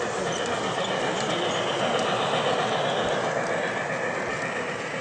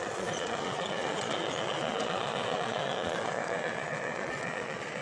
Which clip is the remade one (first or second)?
second